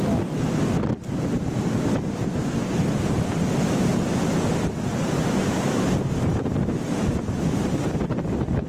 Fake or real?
real